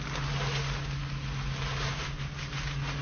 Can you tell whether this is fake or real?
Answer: real